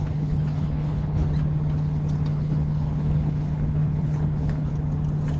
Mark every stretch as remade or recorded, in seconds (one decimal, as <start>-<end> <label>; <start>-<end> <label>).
0.0-1.2 remade; 1.2-2.3 recorded; 2.3-4.7 remade; 4.7-5.4 recorded